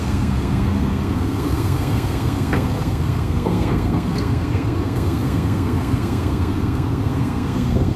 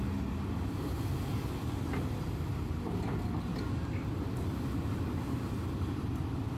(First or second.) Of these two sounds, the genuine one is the second